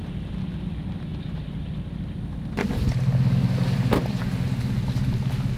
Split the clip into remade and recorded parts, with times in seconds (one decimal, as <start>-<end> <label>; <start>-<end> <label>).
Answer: 0.0-5.6 recorded